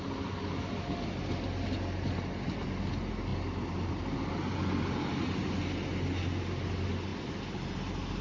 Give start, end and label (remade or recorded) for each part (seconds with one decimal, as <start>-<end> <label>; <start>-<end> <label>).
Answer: 0.0-8.2 recorded